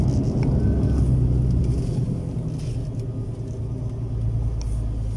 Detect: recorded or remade recorded